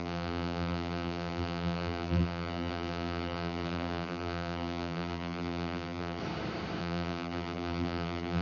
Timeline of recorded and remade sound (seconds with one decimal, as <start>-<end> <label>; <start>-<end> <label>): 0.0-6.2 remade; 6.2-6.8 recorded; 6.8-8.4 remade